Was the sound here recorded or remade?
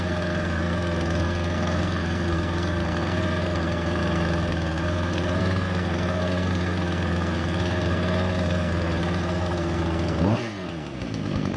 remade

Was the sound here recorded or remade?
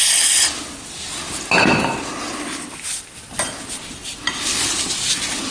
recorded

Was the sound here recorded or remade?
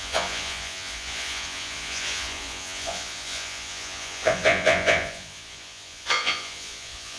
remade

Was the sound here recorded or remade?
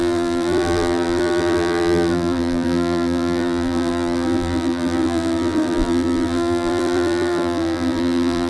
remade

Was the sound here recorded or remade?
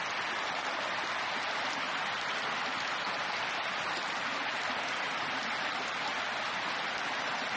recorded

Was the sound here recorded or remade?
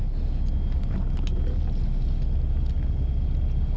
recorded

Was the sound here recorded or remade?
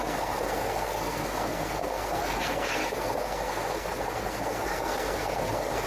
remade